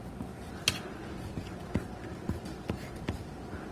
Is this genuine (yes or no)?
yes